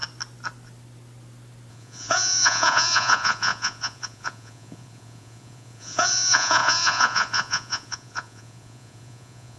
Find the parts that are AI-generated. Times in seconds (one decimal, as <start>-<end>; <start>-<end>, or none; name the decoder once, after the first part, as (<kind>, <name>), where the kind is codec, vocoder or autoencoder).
1.7-9.6 (vocoder, Vocos)